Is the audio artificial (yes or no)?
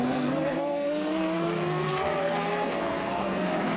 yes